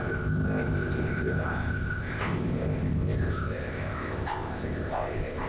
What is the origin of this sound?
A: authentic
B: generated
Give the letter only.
B